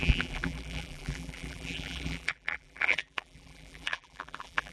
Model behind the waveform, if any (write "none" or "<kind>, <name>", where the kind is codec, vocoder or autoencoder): vocoder, BigVGAN v2